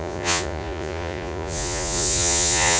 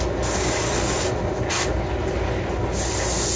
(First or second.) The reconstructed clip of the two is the first